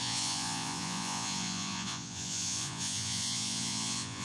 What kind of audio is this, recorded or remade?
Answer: remade